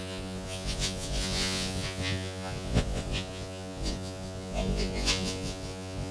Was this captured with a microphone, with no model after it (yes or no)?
no